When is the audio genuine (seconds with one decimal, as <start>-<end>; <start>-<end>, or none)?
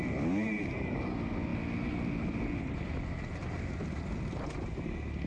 0.0-5.3